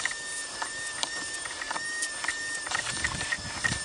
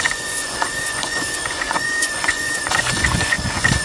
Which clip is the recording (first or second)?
first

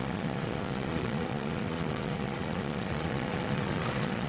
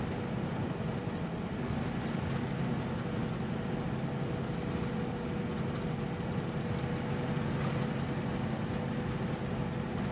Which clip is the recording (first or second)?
second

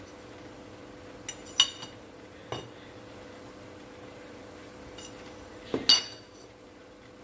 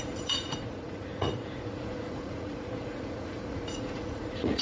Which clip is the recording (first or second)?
first